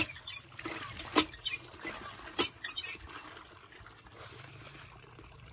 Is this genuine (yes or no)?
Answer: yes